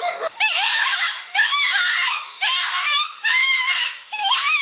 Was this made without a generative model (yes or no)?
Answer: no